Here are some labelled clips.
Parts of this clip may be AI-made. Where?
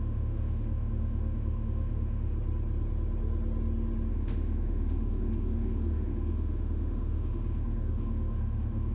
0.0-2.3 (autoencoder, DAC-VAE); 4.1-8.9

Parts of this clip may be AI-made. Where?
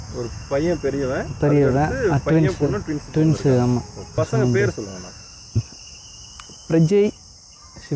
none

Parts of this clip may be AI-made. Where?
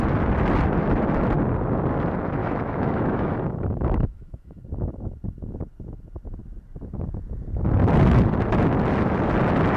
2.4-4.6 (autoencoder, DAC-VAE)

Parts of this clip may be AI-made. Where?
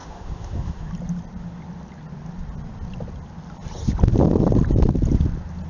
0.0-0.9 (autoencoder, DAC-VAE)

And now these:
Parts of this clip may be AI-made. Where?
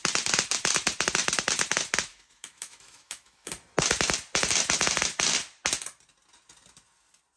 2.1-3.5 (autoencoder, DAC-VAE)